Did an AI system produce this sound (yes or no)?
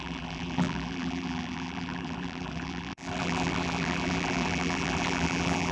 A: yes